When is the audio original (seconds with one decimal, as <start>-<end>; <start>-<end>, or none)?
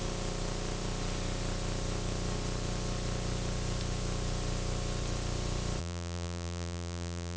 0.0-5.8